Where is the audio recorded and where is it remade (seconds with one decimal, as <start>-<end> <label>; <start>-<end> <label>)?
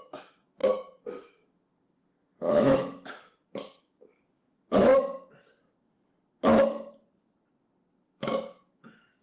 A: 0.0-4.9 remade; 4.9-8.0 recorded; 8.0-9.2 remade